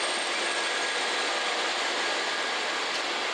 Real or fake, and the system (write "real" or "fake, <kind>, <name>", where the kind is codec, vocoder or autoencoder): real